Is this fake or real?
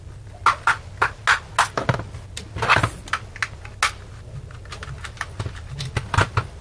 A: real